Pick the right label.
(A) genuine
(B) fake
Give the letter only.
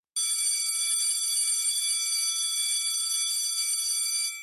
A